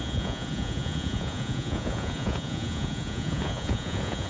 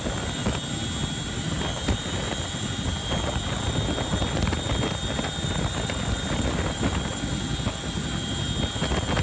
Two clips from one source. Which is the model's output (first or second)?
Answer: first